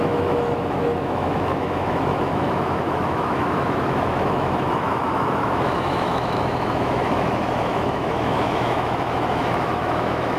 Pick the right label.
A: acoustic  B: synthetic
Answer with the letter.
B